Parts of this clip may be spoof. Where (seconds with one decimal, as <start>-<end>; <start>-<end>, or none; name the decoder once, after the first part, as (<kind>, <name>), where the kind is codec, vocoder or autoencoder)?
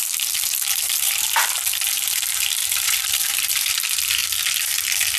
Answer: 0.0-1.9 (vocoder, BigVGAN v2); 2.6-3.5